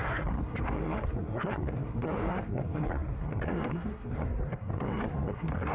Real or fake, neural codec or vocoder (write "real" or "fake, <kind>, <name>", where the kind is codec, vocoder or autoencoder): fake, codec, SNAC